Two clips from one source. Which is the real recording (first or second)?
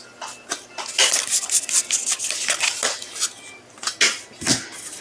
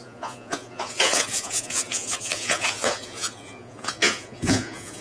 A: first